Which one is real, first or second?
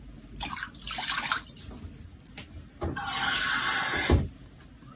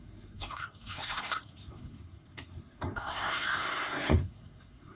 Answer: first